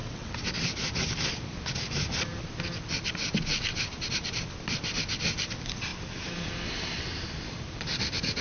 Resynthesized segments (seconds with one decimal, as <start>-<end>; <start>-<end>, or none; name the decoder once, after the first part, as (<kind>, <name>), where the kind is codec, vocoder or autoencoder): 0.0-0.5 (vocoder, WaveNeXt)